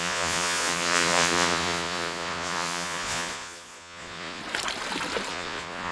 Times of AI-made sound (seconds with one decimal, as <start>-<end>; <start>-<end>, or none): 0.0-4.4; 5.3-5.9